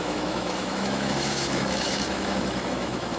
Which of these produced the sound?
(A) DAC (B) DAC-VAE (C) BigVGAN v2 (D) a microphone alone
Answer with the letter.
B